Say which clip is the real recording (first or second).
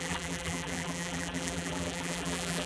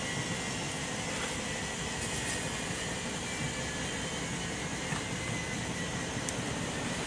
second